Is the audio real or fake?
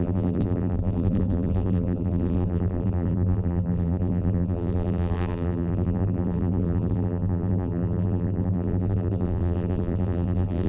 fake